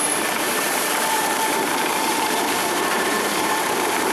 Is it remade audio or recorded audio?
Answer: remade